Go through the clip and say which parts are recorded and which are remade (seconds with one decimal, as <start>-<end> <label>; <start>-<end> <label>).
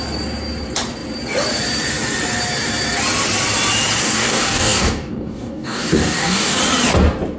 0.0-4.0 recorded; 4.0-6.6 remade; 6.6-7.4 recorded